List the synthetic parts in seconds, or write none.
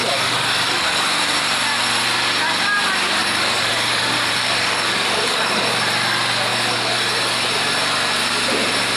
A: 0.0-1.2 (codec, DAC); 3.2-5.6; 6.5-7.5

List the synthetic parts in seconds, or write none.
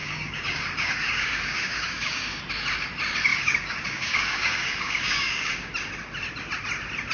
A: 0.0-2.4 (codec, DAC); 3.3-5.7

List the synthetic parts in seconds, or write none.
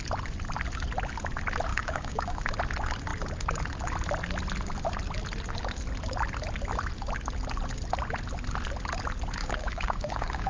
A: 1.7-2.4 (codec, DAC); 9.4-10.5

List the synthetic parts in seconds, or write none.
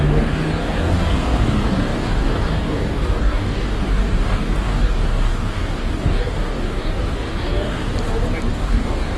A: 0.0-7.9 (codec, DAC); 8.5-9.2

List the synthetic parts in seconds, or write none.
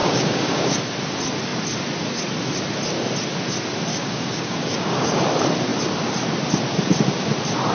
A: 0.0-0.8 (codec, DAC); 3.9-5.2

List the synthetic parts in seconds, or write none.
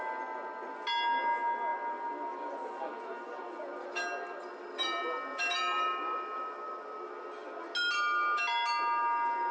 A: none